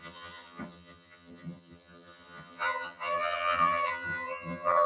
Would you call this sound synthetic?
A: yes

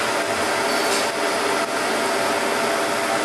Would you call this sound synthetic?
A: no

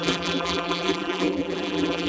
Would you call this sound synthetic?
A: yes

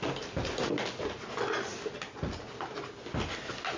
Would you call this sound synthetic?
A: no